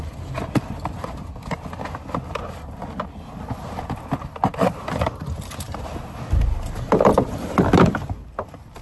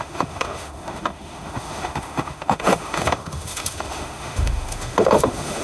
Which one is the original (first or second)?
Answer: first